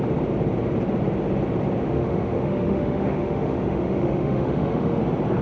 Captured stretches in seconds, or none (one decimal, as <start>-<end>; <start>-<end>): 0.0-1.8; 5.0-5.4